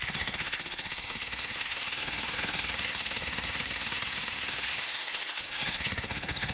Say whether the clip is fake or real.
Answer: fake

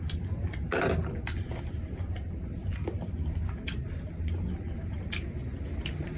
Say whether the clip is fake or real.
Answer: real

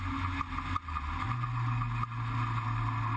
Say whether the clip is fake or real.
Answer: real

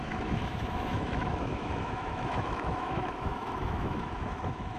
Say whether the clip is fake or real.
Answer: fake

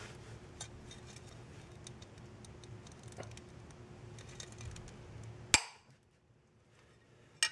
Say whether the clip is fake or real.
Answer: real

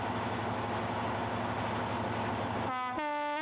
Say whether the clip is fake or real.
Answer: real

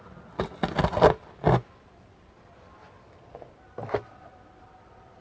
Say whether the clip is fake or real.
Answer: real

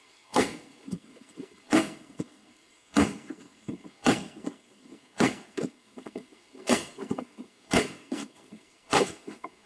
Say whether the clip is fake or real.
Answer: fake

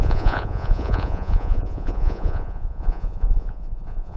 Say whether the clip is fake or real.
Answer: fake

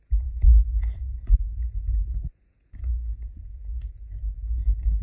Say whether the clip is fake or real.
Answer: fake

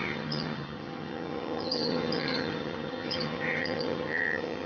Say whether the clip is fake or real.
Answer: fake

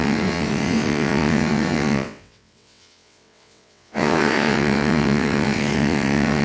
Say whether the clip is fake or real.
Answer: fake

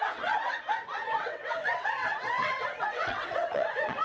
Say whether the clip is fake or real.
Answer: fake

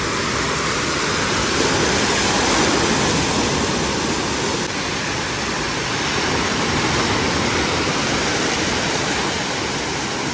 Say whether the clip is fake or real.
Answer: real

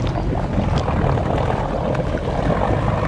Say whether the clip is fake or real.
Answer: real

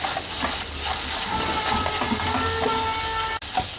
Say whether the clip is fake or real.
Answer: real